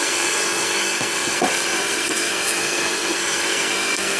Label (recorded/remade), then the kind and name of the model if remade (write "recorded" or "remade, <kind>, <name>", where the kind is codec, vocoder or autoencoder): remade, codec, SNAC